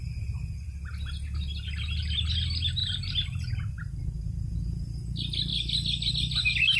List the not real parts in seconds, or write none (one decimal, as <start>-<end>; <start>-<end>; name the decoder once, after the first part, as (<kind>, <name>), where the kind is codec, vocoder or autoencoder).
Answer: none